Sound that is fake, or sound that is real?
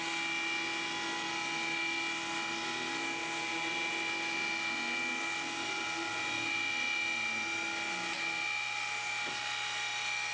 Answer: real